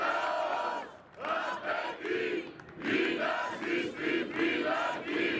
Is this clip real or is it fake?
real